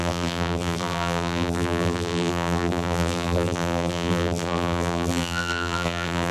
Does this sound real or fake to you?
fake